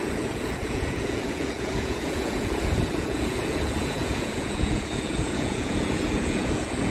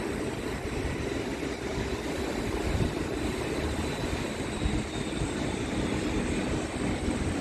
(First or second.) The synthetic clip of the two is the first